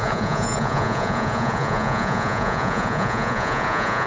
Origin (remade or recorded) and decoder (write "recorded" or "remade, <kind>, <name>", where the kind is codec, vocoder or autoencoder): remade, vocoder, Vocos